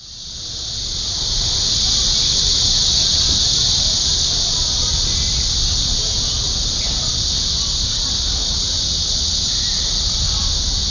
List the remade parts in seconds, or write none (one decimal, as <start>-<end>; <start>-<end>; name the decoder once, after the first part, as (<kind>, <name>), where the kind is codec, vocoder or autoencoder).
none